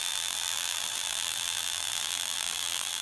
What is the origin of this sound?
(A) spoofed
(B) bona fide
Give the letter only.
A